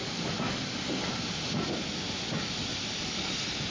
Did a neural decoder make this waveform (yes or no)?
no